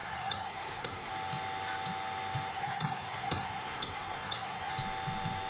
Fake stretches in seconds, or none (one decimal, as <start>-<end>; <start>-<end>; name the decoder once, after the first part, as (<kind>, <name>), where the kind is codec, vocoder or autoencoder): 0.0-1.1 (codec, SNAC); 2.5-4.7